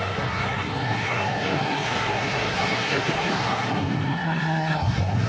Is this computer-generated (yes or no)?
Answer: yes